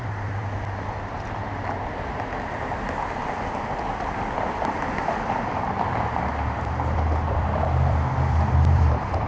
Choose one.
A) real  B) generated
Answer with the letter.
B